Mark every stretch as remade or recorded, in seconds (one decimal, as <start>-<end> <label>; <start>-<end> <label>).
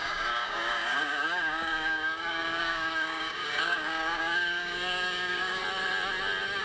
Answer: 0.0-5.6 remade; 5.6-6.6 recorded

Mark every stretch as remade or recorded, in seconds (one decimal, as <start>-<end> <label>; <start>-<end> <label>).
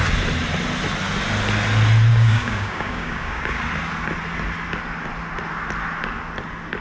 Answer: 0.0-2.1 recorded; 2.1-3.6 remade; 3.6-6.8 recorded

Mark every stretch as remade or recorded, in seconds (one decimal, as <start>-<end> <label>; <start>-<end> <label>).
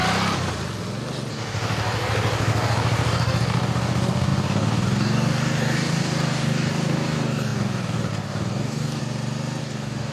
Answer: 0.0-1.3 recorded; 1.3-9.0 remade; 9.0-9.6 recorded; 9.6-10.1 remade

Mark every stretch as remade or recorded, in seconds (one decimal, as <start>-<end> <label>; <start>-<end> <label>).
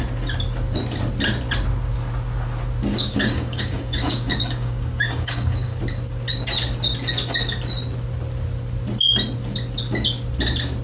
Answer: 0.0-2.9 recorded; 2.9-5.8 remade; 5.8-10.8 recorded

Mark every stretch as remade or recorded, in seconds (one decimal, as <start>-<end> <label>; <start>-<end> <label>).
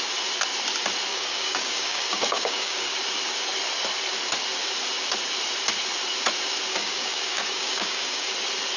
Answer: 0.0-1.1 recorded; 1.1-2.9 remade; 2.9-6.7 recorded; 6.7-8.3 remade; 8.3-8.8 recorded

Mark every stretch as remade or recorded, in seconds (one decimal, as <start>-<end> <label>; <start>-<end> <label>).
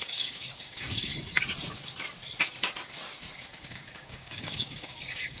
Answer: 0.0-1.1 remade; 1.1-3.5 recorded; 3.5-5.4 remade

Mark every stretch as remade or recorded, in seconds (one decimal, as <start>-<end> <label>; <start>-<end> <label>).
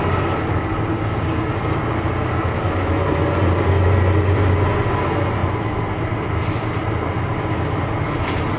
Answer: 0.0-0.9 recorded; 0.9-1.5 remade; 1.5-8.6 recorded